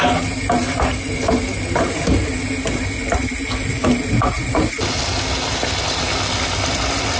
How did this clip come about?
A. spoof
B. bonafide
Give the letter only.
B